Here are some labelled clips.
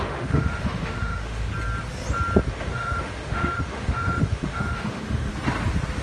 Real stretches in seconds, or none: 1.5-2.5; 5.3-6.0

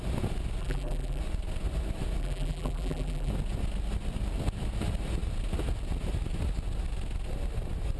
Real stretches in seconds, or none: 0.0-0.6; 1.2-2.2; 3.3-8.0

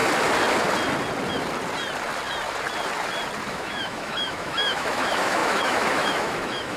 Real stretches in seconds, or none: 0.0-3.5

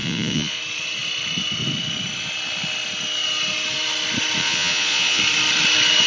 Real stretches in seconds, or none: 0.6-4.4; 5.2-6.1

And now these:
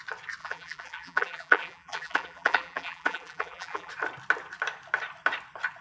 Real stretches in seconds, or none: 0.0-0.4; 3.9-5.8

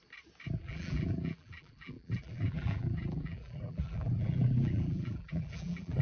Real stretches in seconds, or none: 0.0-0.6